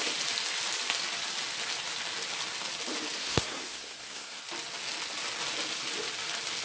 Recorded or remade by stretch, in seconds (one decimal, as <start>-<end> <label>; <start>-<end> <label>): 0.0-3.2 recorded; 3.2-4.4 remade; 4.4-6.6 recorded